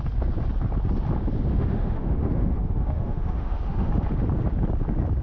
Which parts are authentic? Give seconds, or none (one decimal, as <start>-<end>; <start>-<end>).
0.0-1.5; 3.9-5.2